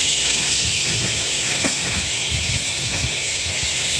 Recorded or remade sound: remade